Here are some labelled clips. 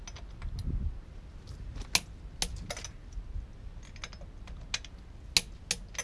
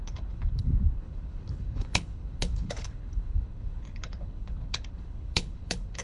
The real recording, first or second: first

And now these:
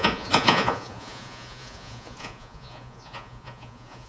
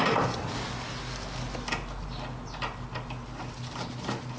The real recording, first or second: second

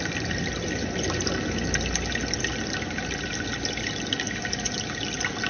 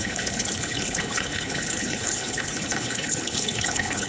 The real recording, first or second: first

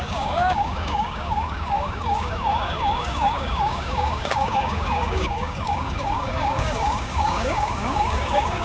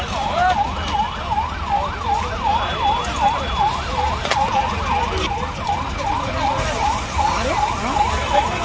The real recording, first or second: second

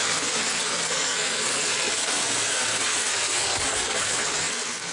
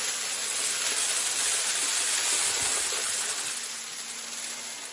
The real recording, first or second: second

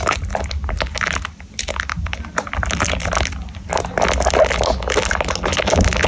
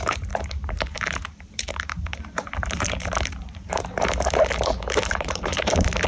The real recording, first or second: first